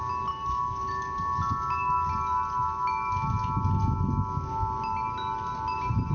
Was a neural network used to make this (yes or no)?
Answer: no